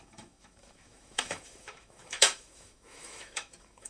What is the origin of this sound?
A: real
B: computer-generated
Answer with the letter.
B